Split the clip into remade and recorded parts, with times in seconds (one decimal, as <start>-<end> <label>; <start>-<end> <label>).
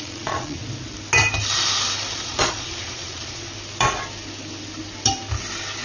0.0-0.6 remade; 0.6-2.1 recorded; 2.1-3.5 remade; 3.5-5.8 recorded